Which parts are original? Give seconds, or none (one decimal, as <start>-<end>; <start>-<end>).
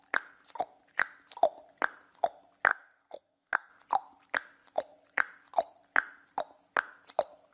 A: 0.0-2.7; 3.7-7.5